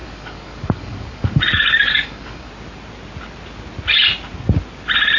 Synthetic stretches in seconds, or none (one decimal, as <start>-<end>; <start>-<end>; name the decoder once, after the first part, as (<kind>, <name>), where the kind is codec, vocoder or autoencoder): 0.0-2.5 (codec, DAC)